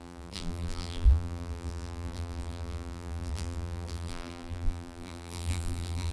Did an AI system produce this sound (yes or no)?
yes